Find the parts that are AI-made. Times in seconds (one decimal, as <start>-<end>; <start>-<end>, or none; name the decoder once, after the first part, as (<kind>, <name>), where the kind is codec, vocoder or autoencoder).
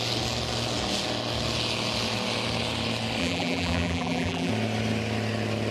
3.2-4.5 (vocoder, BigVGAN v2)